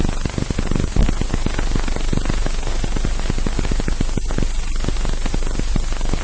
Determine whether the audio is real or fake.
real